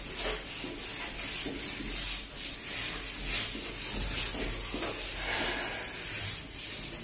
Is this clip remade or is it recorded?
recorded